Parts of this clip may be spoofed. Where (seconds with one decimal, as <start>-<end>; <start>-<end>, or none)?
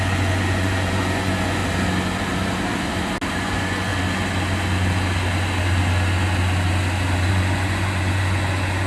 0.0-1.6; 3.3-3.9; 7.3-8.9